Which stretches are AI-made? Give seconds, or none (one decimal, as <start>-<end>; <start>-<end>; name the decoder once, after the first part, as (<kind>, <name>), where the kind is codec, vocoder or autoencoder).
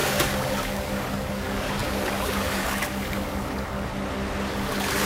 0.0-3.9 (codec, DAC); 4.5-5.1